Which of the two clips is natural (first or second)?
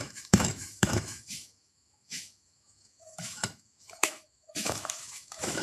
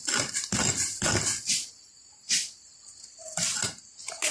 second